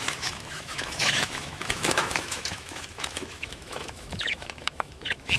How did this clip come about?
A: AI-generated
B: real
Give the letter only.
A